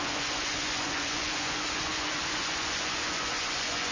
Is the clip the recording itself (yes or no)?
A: no